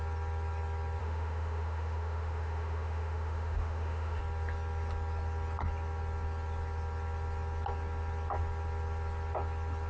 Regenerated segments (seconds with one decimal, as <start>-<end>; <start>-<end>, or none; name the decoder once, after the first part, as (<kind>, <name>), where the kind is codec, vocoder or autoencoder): 1.0-4.2 (autoencoder, DAC-VAE)